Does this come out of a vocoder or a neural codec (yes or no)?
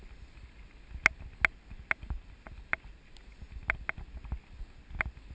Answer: no